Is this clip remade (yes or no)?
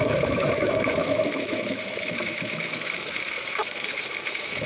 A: yes